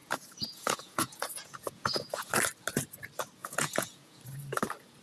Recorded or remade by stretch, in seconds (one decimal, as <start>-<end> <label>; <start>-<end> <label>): 0.0-2.3 remade; 2.3-3.4 recorded; 3.4-4.2 remade; 4.2-5.0 recorded